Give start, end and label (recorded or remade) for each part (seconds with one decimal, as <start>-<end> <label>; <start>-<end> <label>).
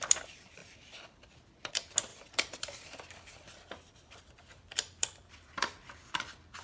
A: 0.0-2.1 recorded; 2.1-5.9 remade; 5.9-6.6 recorded